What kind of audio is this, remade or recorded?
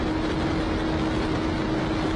recorded